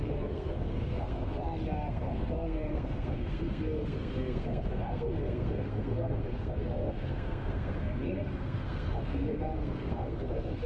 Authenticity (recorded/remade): remade